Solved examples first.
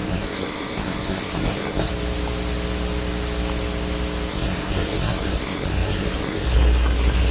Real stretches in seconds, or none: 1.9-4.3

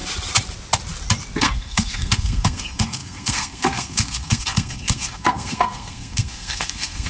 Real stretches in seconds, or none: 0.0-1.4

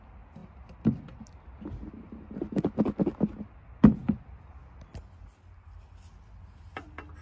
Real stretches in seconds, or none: 0.0-7.2

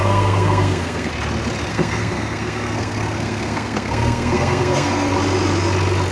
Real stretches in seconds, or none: 1.1-1.7; 5.1-6.1

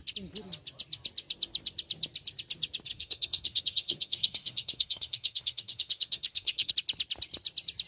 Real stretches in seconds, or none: 0.0-2.9; 6.7-7.9

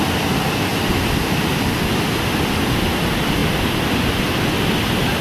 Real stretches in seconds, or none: 0.0-5.2